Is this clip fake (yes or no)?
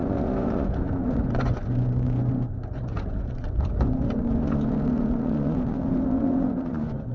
yes